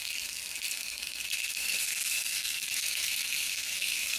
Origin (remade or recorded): remade